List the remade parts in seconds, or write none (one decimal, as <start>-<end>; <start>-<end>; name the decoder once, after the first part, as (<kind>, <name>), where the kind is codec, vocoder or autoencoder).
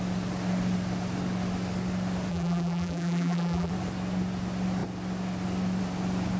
2.3-3.7 (vocoder, BigVGAN v2)